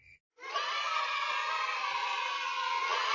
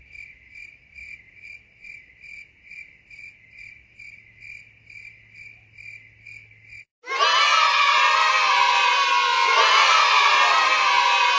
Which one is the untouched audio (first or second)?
second